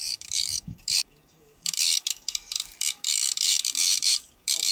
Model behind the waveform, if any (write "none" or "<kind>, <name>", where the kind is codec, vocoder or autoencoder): codec, DAC